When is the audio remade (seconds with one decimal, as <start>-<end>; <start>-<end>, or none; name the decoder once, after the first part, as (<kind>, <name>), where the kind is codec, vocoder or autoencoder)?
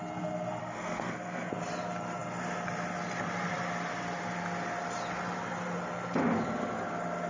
0.6-1.5 (codec, SNAC)